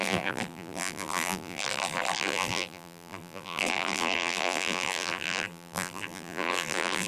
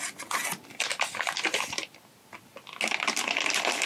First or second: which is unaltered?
second